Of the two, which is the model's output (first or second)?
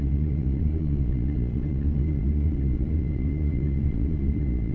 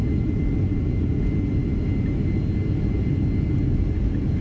first